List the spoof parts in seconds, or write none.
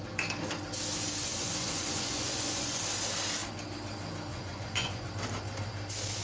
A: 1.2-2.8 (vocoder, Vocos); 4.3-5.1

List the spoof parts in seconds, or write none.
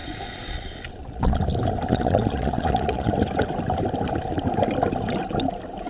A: 0.0-1.4 (vocoder, Vocos); 1.9-3.1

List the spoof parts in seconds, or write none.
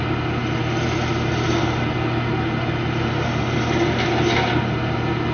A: none